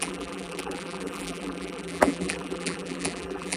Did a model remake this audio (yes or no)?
yes